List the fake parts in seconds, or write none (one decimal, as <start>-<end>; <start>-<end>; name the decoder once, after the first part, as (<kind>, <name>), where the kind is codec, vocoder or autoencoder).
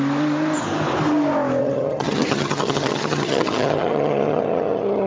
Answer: 1.6-5.1 (vocoder, HiFi-GAN)